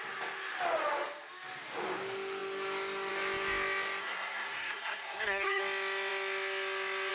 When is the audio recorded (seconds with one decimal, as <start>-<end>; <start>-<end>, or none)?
0.0-4.0; 5.6-7.1

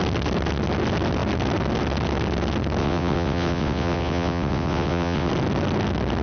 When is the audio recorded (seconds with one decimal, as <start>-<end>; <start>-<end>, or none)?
0.0-2.8; 5.3-6.2

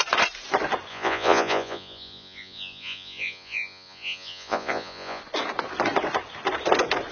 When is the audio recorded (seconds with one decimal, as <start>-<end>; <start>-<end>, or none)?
0.0-0.9; 5.2-7.1